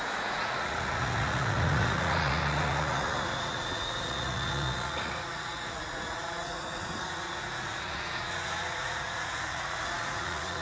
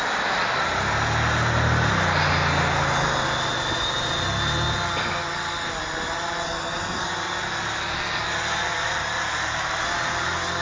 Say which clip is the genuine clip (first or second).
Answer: second